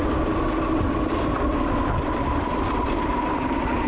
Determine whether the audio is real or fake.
real